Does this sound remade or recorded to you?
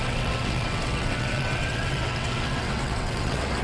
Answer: remade